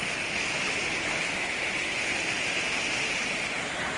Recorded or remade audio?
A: recorded